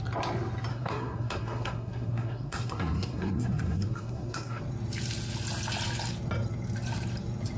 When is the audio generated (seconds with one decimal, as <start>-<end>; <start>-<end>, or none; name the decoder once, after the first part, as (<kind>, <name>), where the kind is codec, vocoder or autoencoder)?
0.7-4.6 (codec, SNAC)